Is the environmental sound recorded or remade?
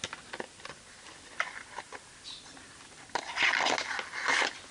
recorded